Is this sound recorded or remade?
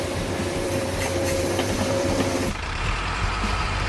remade